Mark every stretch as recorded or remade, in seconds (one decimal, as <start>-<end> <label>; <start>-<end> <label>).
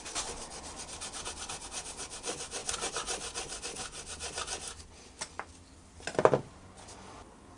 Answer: 0.0-7.6 recorded